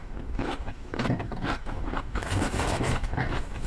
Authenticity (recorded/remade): remade